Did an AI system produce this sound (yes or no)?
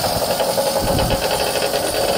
no